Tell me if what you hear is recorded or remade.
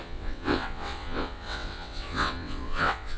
remade